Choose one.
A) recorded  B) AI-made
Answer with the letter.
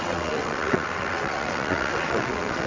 B